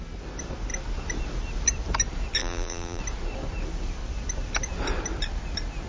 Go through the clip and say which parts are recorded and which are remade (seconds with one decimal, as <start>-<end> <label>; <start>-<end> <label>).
0.0-2.4 recorded; 2.4-3.0 remade; 3.0-5.9 recorded